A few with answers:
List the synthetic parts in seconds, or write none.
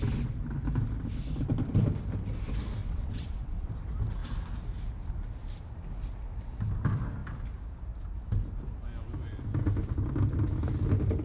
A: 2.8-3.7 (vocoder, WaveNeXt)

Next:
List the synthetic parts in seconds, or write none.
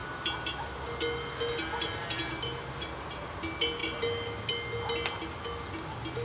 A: none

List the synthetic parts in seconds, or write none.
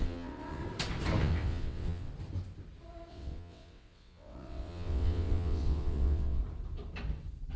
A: 0.0-0.6 (vocoder, WaveNeXt); 1.2-2.1; 3.1-6.4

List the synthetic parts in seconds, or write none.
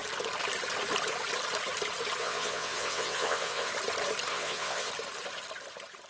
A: 2.2-3.7 (vocoder, WaveNeXt); 4.3-4.9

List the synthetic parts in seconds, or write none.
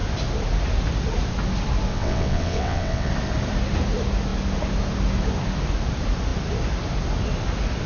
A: 1.9-3.1 (vocoder, WaveNeXt)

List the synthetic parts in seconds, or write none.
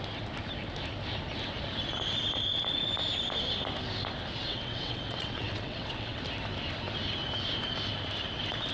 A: 4.5-6.2 (vocoder, WaveNeXt)